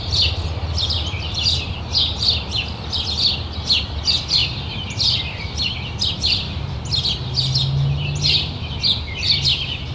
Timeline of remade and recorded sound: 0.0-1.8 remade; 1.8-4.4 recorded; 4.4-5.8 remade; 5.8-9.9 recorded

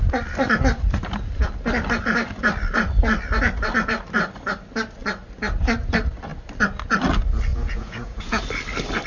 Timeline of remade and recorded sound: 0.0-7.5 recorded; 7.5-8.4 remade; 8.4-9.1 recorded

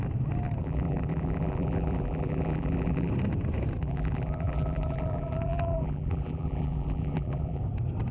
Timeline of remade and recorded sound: 0.0-0.6 recorded; 0.6-3.1 remade; 3.1-3.8 recorded; 3.8-7.6 remade; 7.6-8.1 recorded

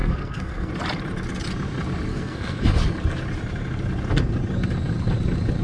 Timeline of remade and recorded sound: 0.0-0.7 remade; 0.7-2.1 recorded; 2.1-2.6 remade; 2.6-5.6 recorded